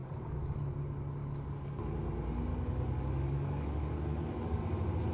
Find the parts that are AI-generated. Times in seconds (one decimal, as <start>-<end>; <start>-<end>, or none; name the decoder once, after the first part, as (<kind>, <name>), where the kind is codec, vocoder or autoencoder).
0.0-0.6 (codec, DAC); 1.2-1.8; 2.5-4.6

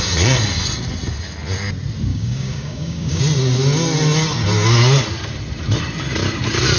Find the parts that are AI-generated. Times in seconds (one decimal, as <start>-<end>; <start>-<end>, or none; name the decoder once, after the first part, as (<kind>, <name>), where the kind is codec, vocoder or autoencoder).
2.1-3.2 (codec, DAC)

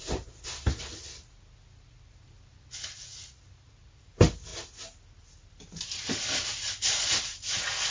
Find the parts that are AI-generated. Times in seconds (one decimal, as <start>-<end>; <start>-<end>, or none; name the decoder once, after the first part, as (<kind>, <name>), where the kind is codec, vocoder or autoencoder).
none

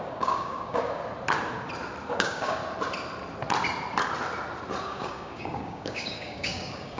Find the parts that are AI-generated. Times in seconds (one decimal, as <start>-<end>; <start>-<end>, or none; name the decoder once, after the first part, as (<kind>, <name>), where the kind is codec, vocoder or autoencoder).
0.0-1.0 (codec, DAC); 2.1-2.6; 4.8-7.0

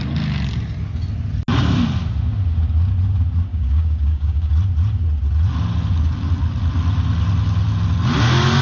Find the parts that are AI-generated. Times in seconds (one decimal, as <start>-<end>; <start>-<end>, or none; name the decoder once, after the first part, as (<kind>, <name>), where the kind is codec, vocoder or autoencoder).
3.5-4.5 (codec, DAC)

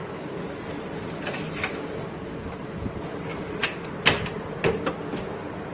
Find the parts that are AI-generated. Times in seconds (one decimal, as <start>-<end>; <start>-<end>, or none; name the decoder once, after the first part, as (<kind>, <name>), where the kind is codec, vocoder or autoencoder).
none